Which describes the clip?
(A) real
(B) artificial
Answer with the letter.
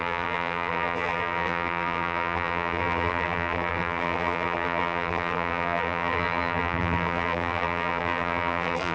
B